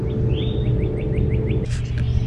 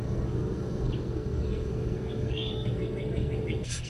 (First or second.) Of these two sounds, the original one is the first